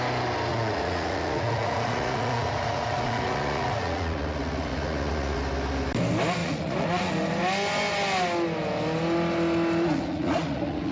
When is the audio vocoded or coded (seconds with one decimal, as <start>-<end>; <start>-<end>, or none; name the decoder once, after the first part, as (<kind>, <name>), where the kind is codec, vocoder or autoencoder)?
0.5-5.4 (vocoder, Vocos); 6.4-7.1; 9.9-10.9